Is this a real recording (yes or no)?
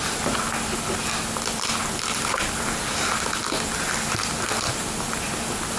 yes